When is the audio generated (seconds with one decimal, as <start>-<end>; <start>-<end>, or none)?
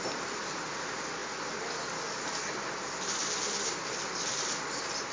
none